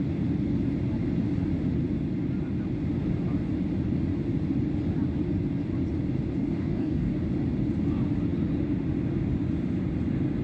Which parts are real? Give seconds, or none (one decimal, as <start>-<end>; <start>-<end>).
0.0-6.4; 7.1-10.4